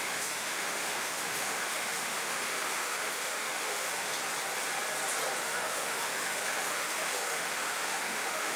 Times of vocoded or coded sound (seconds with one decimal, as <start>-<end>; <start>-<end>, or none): 0.0-4.1; 5.4-8.6